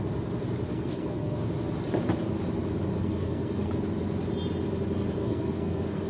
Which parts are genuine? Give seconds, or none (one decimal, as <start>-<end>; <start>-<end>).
0.0-0.7; 1.5-2.9; 3.7-5.2